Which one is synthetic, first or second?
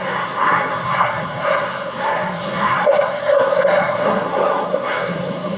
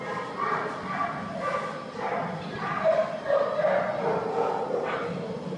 first